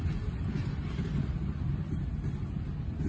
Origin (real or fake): real